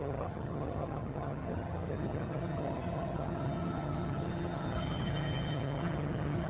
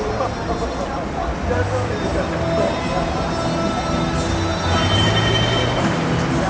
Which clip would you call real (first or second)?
second